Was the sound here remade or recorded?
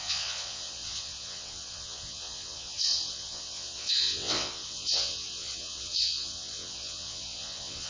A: remade